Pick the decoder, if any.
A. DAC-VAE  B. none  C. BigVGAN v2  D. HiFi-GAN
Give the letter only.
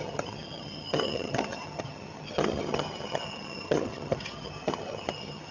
D